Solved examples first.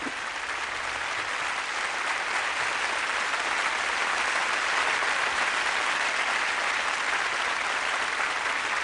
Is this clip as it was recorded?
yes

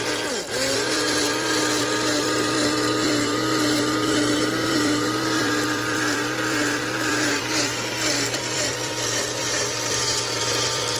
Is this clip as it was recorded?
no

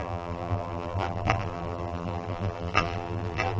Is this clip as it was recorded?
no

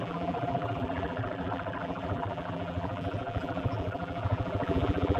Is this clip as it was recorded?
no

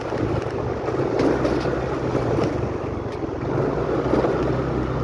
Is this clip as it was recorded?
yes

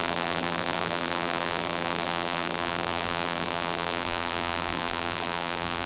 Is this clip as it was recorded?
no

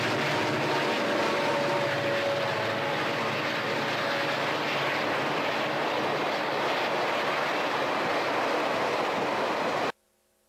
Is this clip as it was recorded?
yes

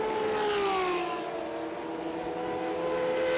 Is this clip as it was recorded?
yes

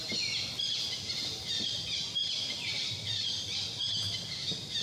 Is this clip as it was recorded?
yes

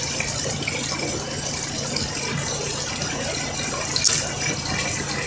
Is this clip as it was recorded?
yes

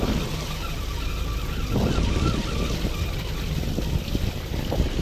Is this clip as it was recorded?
yes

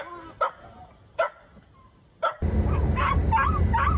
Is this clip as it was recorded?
yes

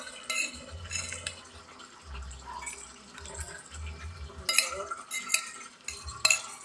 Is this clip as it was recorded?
yes